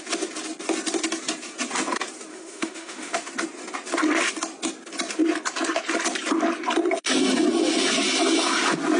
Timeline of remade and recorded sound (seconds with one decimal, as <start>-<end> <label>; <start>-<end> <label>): 0.0-2.3 recorded; 2.3-3.3 remade; 3.3-9.0 recorded